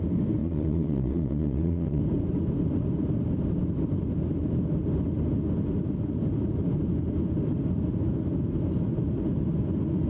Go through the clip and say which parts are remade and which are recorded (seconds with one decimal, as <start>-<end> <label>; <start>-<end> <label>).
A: 0.0-0.4 recorded; 0.4-2.0 remade; 2.0-10.1 recorded